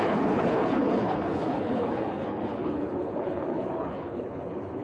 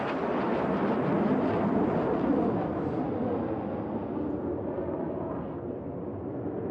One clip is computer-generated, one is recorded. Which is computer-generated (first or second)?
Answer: first